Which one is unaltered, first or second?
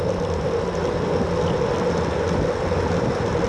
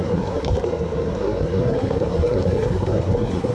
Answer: first